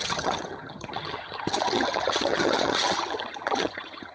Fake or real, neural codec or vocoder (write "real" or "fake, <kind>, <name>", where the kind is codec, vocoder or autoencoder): fake, vocoder, HiFi-GAN